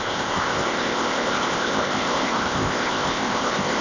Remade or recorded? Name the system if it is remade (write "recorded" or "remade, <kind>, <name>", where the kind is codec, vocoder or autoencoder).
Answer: remade, codec, ZipCodec